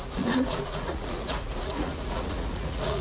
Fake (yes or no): yes